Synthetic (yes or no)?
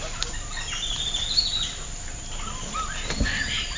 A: no